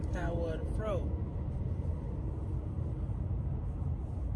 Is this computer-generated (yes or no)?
yes